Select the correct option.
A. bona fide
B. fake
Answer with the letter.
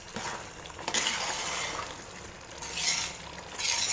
A